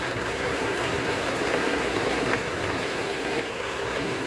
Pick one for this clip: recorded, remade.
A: remade